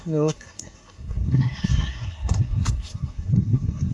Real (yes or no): no